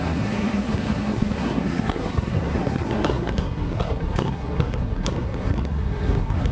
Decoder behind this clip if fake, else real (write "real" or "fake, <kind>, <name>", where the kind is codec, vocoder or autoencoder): fake, codec, SNAC